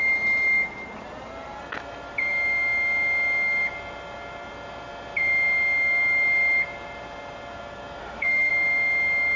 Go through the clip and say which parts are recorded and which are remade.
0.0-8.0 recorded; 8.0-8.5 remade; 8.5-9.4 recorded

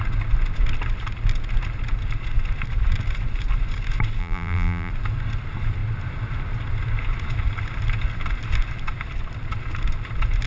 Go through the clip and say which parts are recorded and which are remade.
0.0-4.2 recorded; 4.2-4.9 remade; 4.9-10.5 recorded

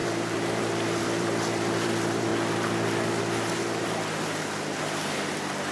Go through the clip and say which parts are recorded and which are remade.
0.0-2.3 remade; 2.3-4.8 recorded; 4.8-5.7 remade

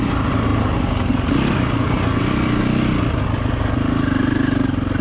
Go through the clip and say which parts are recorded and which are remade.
0.0-5.0 recorded

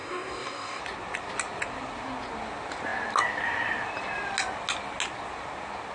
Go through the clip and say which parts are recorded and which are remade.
0.0-0.8 remade; 0.8-5.9 recorded